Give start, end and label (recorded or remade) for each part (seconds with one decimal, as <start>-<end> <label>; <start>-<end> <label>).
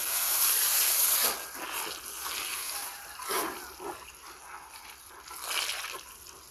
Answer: 0.0-6.5 recorded